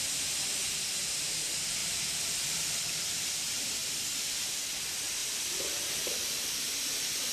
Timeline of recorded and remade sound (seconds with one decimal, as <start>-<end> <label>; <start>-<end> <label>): 0.0-1.8 recorded; 1.8-2.7 remade; 2.7-3.8 recorded; 3.8-4.6 remade; 4.6-5.2 recorded; 5.2-5.8 remade; 5.8-7.3 recorded